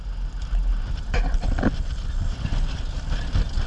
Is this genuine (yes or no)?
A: yes